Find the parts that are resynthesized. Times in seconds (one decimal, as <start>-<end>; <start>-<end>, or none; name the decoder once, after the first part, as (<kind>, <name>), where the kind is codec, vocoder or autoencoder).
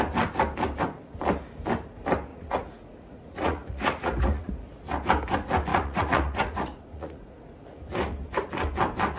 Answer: 2.3-4.5 (vocoder, Vocos); 5.7-7.4